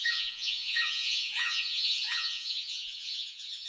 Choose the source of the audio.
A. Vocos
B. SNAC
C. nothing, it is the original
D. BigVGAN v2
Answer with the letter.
A